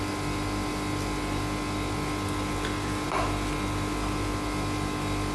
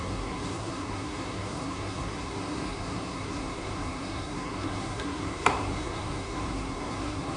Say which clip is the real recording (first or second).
first